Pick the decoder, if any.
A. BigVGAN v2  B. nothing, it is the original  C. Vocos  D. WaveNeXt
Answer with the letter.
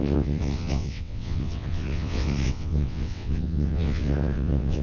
D